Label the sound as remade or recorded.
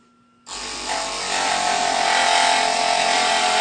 recorded